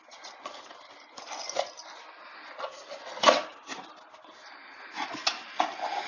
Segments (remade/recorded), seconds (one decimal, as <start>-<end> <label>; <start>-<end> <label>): 0.0-6.1 recorded